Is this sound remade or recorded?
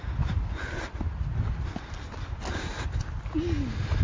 recorded